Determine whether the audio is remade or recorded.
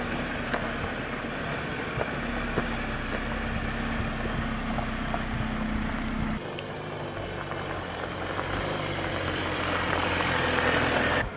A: recorded